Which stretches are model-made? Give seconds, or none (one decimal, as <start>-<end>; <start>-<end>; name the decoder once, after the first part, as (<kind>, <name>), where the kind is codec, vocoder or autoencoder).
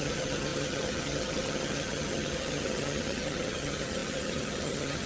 0.0-5.1 (vocoder, HiFi-GAN)